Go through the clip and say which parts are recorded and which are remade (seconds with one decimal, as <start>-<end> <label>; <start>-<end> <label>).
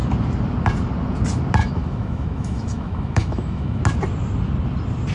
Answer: 0.0-1.6 recorded; 1.6-3.8 remade; 3.8-5.1 recorded